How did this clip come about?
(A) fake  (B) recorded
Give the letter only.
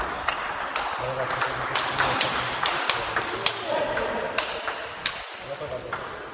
B